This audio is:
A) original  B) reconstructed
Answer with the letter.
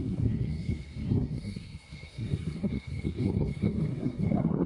B